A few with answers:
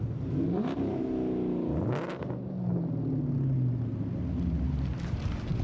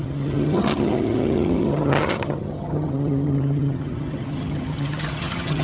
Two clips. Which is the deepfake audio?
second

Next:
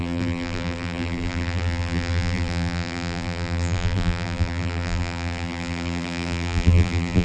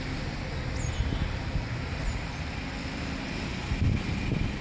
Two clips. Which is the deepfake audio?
first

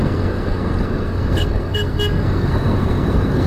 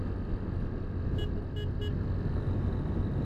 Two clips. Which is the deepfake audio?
first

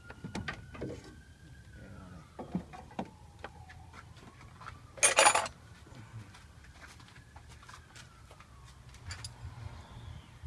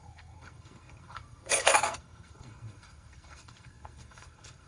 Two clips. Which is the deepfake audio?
second